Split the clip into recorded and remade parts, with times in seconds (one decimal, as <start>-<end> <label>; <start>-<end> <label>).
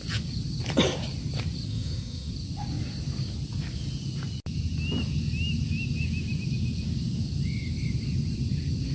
0.0-1.7 recorded; 1.7-2.3 remade; 2.3-8.9 recorded